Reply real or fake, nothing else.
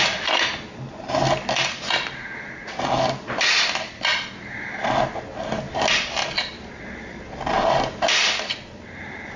real